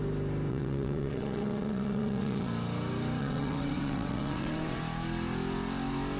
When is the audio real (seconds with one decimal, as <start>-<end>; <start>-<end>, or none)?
0.0-0.5; 2.5-3.2; 4.8-6.2